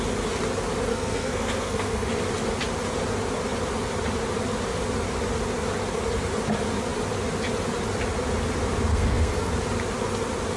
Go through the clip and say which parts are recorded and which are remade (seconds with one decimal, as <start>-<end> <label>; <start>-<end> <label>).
0.0-0.9 recorded; 0.9-2.1 remade; 2.1-8.9 recorded; 8.9-9.5 remade; 9.5-10.6 recorded